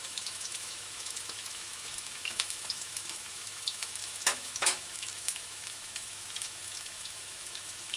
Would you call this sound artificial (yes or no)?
yes